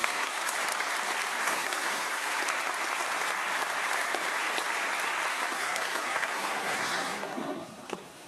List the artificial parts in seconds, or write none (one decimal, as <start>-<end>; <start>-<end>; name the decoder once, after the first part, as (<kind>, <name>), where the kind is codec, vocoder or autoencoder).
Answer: 0.0-0.5 (codec, SNAC); 1.4-2.4; 5.3-8.3